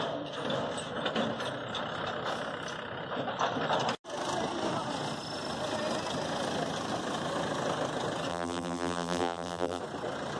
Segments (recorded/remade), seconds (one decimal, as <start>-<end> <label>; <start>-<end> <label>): 0.0-8.3 recorded; 8.3-9.8 remade; 9.8-10.4 recorded